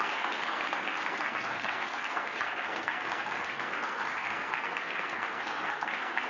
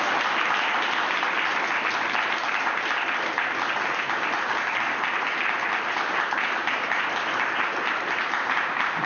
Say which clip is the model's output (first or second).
first